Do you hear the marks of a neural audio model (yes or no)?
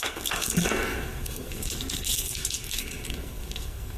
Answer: yes